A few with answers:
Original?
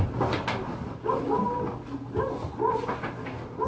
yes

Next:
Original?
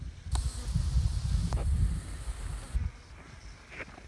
yes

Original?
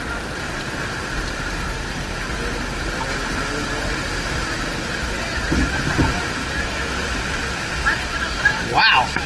yes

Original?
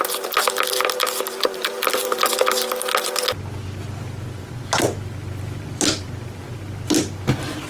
yes